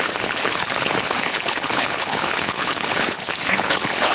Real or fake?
fake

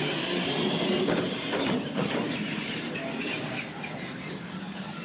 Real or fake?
real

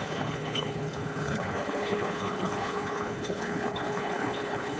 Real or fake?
fake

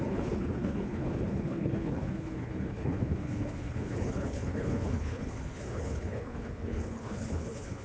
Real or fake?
fake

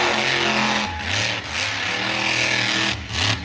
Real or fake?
real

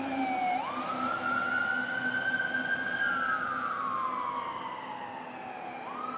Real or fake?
real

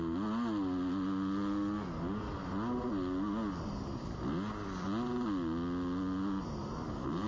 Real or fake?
real